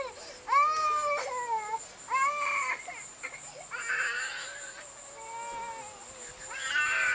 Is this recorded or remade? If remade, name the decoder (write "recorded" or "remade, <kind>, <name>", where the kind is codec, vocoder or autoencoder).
recorded